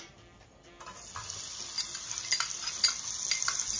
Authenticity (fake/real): real